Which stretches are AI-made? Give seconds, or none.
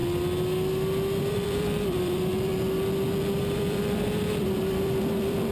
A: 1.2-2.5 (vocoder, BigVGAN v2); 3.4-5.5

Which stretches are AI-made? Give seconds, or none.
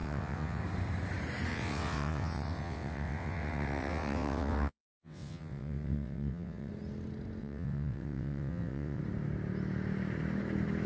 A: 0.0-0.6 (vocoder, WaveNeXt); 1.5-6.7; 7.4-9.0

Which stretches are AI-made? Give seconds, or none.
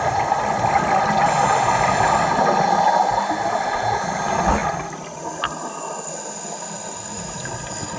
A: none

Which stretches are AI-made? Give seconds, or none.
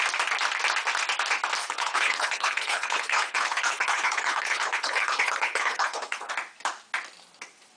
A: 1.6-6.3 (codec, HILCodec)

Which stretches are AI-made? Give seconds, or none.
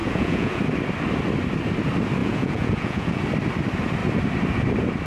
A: 0.0-0.6 (vocoder, Vocos); 2.2-3.2